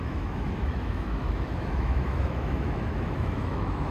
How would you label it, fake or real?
fake